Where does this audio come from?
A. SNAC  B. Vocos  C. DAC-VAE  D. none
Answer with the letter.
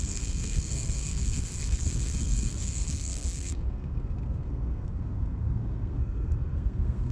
A